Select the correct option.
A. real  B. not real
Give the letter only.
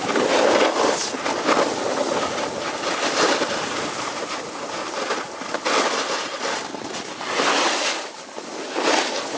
A